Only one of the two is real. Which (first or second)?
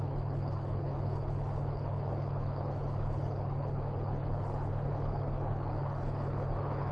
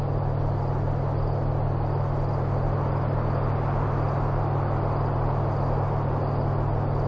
second